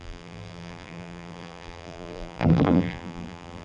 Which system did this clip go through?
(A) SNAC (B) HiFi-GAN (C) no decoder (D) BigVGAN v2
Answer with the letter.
D